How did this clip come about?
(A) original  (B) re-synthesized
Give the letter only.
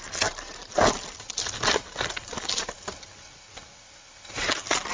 A